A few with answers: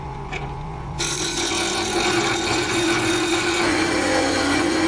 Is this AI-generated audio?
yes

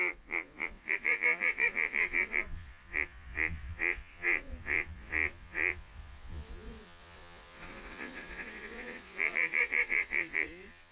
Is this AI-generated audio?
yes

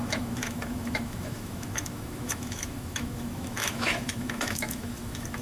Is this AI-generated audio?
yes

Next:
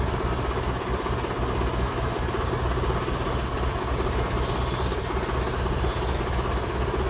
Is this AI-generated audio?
no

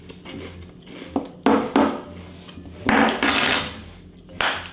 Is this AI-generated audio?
no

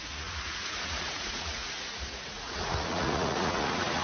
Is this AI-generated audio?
yes